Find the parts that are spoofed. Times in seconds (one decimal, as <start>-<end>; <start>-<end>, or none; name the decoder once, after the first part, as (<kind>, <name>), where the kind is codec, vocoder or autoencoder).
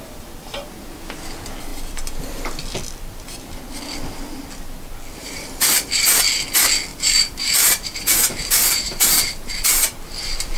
5.2-5.9 (vocoder, BigVGAN v2); 6.9-9.5